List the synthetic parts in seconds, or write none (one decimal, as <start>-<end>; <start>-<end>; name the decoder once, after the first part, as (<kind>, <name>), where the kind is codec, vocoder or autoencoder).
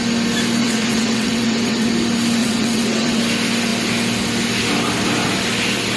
0.6-1.9 (vocoder, WaveNeXt); 2.4-3.2